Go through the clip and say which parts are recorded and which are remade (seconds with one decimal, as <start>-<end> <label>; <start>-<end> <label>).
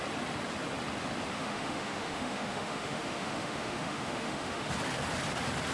0.0-1.3 recorded; 1.3-4.7 remade; 4.7-5.7 recorded